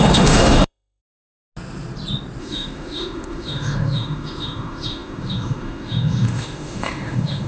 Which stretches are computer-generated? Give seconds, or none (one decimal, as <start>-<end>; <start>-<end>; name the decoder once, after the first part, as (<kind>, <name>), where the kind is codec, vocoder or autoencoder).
0.0-1.0 (autoencoder, DAC-VAE); 2.4-7.5